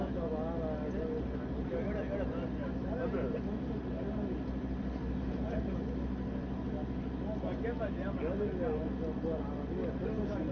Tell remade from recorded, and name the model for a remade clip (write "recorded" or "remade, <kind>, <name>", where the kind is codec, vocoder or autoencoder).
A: recorded